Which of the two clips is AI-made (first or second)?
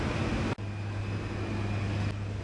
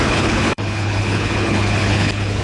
second